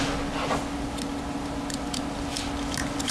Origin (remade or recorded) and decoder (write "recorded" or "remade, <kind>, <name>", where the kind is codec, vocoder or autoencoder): recorded